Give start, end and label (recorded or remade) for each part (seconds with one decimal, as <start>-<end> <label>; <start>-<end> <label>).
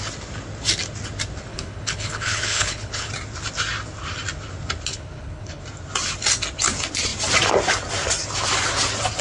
0.0-1.5 recorded; 1.5-3.1 remade; 3.1-4.9 recorded; 4.9-5.6 remade; 5.6-9.2 recorded